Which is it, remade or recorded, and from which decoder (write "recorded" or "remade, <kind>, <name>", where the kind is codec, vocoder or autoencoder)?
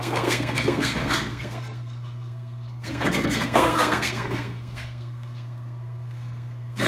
remade, codec, SNAC